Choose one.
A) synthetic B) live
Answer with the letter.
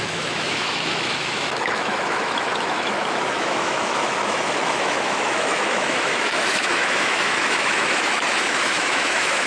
A